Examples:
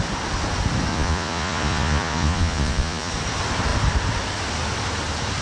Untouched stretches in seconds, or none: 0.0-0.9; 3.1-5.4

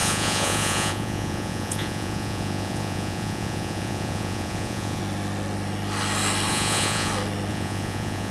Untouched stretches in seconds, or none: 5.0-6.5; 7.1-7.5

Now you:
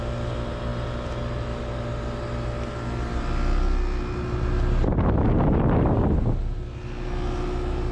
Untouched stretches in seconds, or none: 0.0-7.9